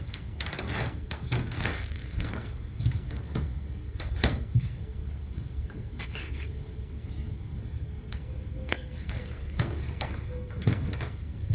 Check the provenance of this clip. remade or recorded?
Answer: remade